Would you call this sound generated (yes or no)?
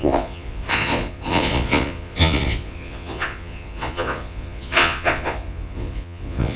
yes